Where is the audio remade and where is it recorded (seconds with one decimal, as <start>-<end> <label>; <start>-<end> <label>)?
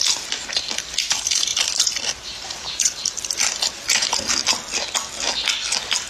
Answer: 0.0-1.5 recorded; 1.5-4.3 remade; 4.3-6.1 recorded